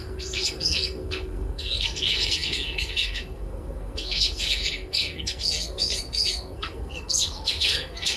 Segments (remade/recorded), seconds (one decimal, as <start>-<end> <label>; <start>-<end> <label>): 0.0-8.2 remade

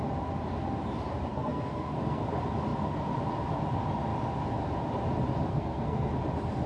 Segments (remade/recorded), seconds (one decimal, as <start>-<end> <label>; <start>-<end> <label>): 0.0-1.3 recorded; 1.3-2.3 remade; 2.3-5.5 recorded; 5.5-6.1 remade; 6.1-6.7 recorded